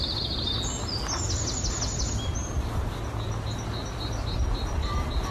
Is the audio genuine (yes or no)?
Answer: yes